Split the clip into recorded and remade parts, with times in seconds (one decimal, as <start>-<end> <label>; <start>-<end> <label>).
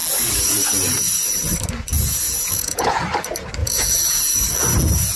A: 0.0-1.9 recorded; 1.9-3.0 remade; 3.0-3.6 recorded; 3.6-4.2 remade; 4.2-5.2 recorded